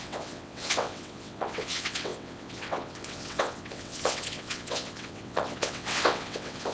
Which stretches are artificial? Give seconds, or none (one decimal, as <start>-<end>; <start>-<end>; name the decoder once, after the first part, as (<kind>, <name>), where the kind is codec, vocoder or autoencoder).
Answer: 0.0-6.7 (vocoder, WaveNeXt)